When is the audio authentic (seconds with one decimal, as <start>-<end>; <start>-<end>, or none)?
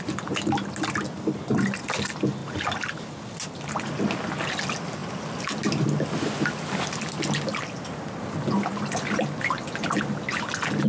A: 0.0-10.9